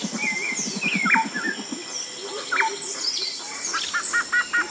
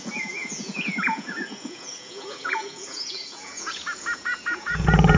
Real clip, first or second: first